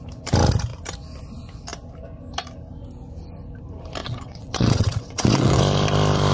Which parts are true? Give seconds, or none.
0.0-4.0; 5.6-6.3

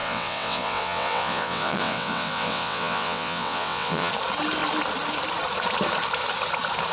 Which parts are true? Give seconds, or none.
4.1-6.9

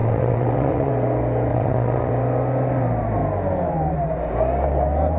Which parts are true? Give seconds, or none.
0.9-1.5; 2.1-5.2

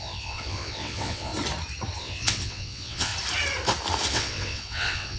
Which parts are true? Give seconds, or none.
1.3-2.0; 3.1-4.1

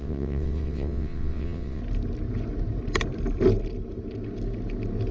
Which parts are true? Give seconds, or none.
1.8-5.1